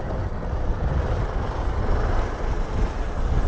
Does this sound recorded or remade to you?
recorded